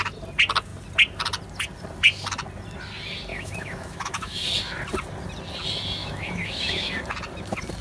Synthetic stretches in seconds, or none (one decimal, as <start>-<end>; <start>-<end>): 3.3-4.5; 6.0-7.0